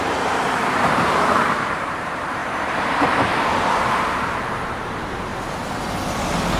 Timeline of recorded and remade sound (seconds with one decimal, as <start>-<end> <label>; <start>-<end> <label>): 0.0-5.3 remade; 5.3-6.6 recorded